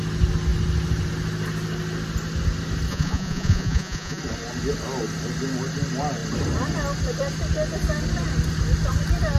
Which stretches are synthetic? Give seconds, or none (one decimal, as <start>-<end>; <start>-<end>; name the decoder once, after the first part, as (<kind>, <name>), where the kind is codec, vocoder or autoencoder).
2.9-4.2 (vocoder, Vocos)